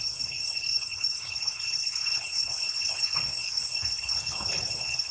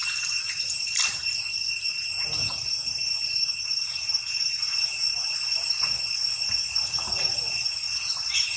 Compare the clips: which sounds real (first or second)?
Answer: second